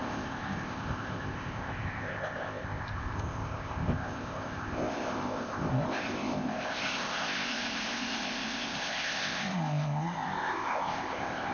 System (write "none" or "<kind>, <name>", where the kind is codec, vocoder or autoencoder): codec, ZipCodec